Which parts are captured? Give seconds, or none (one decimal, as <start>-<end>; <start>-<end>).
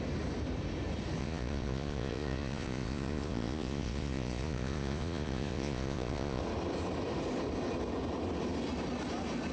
0.0-1.2; 6.4-9.5